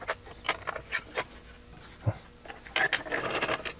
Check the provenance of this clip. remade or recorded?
recorded